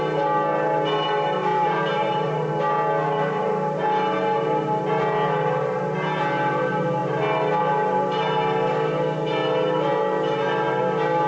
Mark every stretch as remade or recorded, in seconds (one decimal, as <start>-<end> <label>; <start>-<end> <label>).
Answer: 0.0-1.5 recorded; 1.5-2.5 remade; 2.5-11.3 recorded